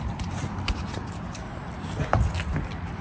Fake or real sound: real